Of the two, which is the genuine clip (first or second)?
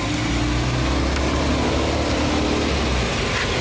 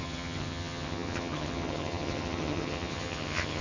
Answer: first